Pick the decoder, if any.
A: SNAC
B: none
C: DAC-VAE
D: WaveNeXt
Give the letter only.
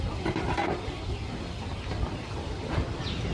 B